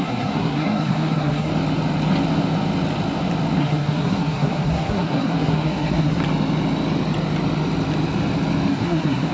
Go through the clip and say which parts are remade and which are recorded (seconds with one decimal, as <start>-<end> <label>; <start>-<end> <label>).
0.0-1.5 remade; 1.5-3.6 recorded; 3.6-6.2 remade; 6.2-8.7 recorded; 8.7-9.3 remade